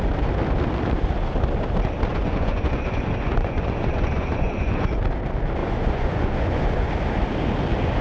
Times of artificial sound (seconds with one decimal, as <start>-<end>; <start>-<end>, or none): 2.1-4.9; 5.6-6.9